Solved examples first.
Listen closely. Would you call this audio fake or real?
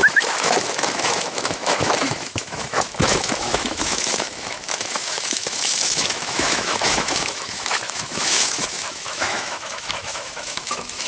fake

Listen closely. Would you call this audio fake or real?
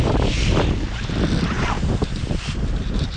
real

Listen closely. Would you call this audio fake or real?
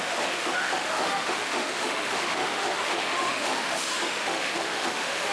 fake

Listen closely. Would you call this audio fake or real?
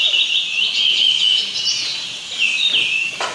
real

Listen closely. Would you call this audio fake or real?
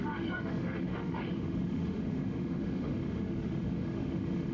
fake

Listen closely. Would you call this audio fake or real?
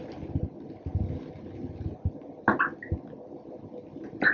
real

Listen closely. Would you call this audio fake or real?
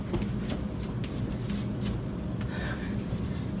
real